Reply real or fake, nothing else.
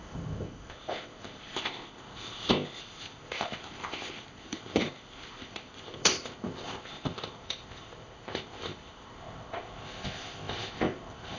fake